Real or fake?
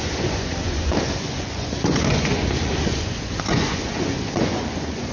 fake